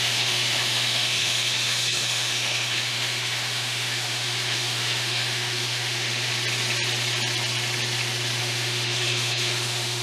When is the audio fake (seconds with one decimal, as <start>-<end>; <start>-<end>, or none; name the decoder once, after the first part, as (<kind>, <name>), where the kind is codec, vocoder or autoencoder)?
0.0-6.3 (autoencoder, DAC-VAE); 8.4-10.0